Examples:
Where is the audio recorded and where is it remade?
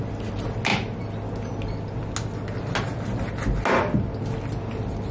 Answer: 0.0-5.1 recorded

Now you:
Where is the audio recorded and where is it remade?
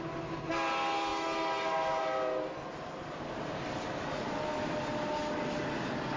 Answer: 0.0-6.2 recorded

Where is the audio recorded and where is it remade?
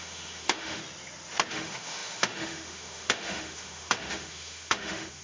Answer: 0.0-0.8 remade; 0.8-1.5 recorded; 1.5-5.2 remade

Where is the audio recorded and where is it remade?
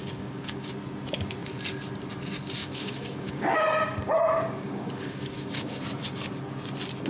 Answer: 0.0-0.7 remade; 0.7-2.6 recorded; 2.6-5.8 remade; 5.8-7.1 recorded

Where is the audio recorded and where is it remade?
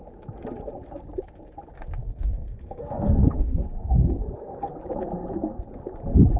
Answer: 0.0-2.0 recorded; 2.0-4.7 remade; 4.7-6.4 recorded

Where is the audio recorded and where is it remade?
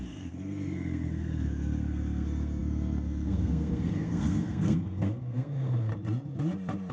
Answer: 0.0-5.9 remade; 5.9-6.9 recorded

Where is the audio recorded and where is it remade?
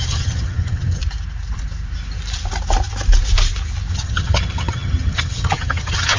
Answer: 0.0-1.0 remade; 1.0-3.9 recorded; 3.9-6.2 remade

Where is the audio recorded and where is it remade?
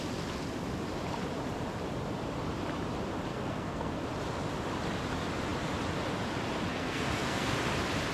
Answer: 0.0-3.3 recorded; 3.3-4.0 remade; 4.0-6.7 recorded; 6.7-7.5 remade; 7.5-8.1 recorded